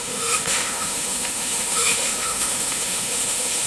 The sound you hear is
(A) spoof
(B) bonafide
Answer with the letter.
A